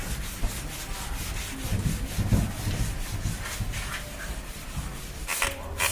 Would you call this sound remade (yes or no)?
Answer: no